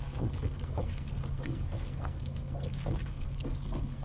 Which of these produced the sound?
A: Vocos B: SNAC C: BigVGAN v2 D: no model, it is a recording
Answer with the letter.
B